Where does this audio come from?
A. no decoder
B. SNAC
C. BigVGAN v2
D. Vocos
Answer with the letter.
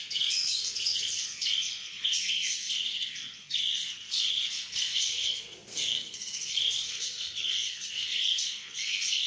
B